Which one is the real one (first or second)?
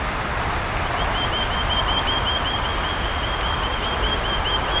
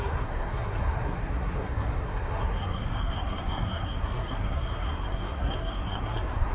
first